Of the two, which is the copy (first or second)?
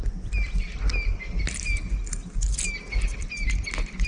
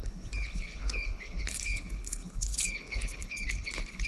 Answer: second